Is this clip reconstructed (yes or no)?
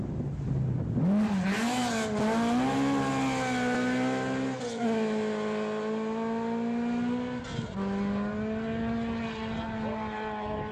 no